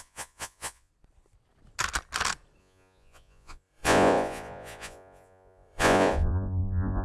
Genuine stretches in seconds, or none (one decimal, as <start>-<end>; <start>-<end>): 0.9-2.6